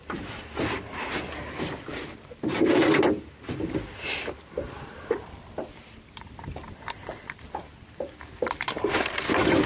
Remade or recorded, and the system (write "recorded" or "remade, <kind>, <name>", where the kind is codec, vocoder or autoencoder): remade, vocoder, BigVGAN v2